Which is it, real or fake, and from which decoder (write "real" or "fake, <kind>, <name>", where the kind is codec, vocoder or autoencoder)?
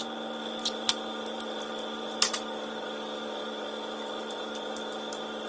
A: real